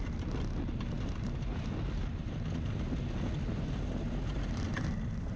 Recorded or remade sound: recorded